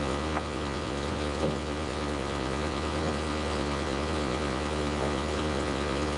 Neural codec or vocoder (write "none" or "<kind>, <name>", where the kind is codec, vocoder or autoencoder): vocoder, Vocos